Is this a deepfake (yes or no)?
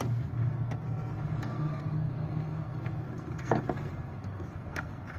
yes